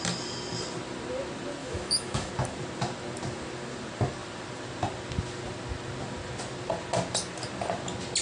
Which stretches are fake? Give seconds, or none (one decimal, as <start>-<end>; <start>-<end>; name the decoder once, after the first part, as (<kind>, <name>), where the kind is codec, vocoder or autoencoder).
1.6-2.3 (autoencoder, DAC-VAE)